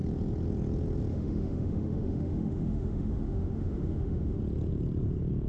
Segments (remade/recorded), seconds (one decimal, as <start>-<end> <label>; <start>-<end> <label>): 0.0-1.1 recorded; 1.1-4.4 remade; 4.4-5.5 recorded